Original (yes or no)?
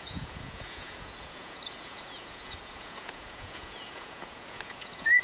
no